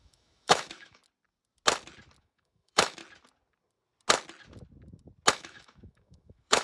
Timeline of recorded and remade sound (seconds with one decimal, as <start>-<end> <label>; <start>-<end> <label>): 0.0-1.0 remade; 1.0-2.2 recorded; 2.2-3.0 remade; 3.0-5.3 recorded; 5.3-6.6 remade